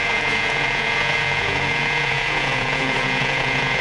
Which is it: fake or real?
fake